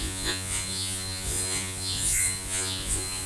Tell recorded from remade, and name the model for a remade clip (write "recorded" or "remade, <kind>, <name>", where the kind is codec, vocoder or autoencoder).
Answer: remade, vocoder, Vocos